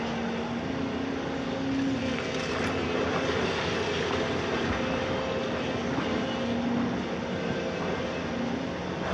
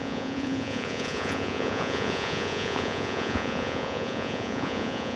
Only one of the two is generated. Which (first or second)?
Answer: second